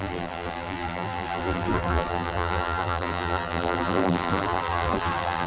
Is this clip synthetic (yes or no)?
yes